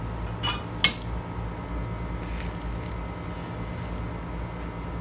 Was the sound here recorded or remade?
recorded